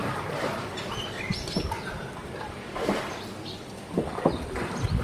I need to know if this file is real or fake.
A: fake